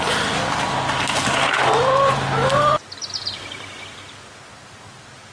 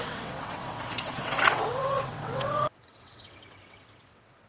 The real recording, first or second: first